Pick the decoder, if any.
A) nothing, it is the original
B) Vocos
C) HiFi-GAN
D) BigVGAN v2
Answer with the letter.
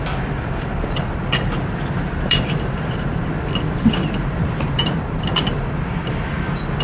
D